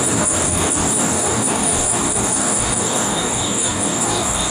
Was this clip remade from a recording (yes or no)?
yes